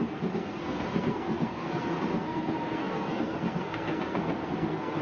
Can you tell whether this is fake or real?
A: fake